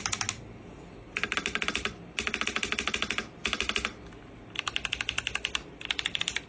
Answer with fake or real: real